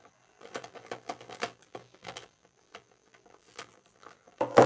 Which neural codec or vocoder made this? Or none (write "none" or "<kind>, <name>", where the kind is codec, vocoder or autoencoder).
vocoder, BigVGAN v2